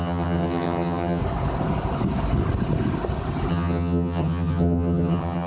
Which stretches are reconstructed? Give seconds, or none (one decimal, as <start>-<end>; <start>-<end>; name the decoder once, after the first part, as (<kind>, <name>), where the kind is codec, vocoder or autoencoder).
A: 0.0-1.2 (vocoder, HiFi-GAN); 3.5-5.5